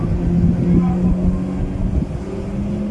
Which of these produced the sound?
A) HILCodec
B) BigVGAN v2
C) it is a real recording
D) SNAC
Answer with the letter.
C